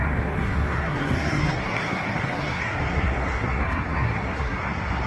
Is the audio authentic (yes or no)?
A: no